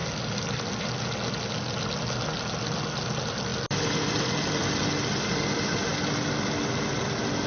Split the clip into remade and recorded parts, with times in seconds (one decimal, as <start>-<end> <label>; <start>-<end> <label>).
0.0-3.5 recorded; 3.5-4.2 remade; 4.2-7.5 recorded